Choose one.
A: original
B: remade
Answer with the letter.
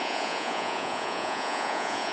B